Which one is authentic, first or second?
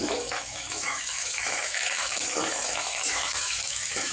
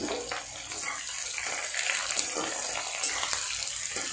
second